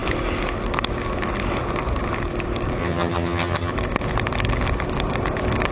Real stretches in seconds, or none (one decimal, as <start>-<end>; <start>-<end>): 0.0-2.8; 3.7-5.7